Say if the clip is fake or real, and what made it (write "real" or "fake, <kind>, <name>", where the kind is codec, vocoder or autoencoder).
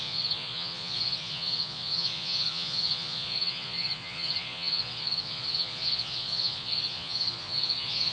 fake, vocoder, Vocos